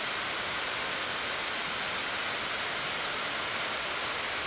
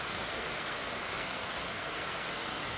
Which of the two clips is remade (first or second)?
second